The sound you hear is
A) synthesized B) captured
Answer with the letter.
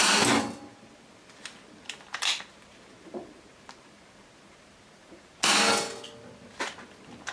B